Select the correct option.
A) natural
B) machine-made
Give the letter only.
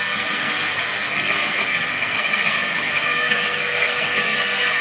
B